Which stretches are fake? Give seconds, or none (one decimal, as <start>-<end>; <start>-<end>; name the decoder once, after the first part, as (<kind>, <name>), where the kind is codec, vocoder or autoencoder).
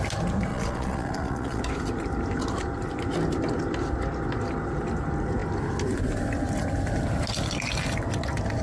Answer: 0.5-1.6 (vocoder, Vocos)